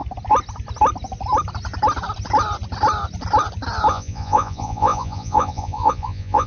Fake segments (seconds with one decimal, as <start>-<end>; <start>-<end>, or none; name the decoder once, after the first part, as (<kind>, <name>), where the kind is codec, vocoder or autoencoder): 3.9-6.5 (vocoder, Vocos)

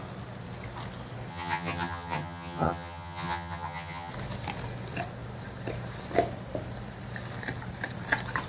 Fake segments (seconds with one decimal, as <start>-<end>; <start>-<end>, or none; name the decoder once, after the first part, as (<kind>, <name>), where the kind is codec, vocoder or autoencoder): 1.3-4.1 (vocoder, HiFi-GAN)

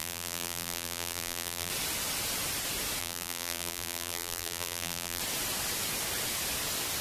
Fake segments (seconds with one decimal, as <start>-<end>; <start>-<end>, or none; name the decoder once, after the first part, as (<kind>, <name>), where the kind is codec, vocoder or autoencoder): 0.0-1.7 (vocoder, BigVGAN v2); 3.0-5.2

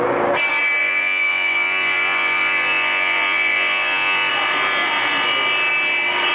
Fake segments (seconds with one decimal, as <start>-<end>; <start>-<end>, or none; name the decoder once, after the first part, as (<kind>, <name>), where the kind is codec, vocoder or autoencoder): 0.8-4.3 (vocoder, Vocos)

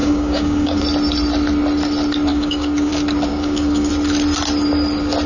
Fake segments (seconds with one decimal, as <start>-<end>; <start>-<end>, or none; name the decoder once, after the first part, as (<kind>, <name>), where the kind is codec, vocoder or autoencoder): 0.0-0.8 (codec, DAC); 2.3-2.9; 3.3-3.9